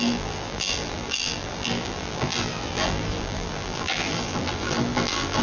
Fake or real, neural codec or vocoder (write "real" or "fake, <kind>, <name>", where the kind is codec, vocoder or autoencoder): fake, vocoder, BigVGAN v2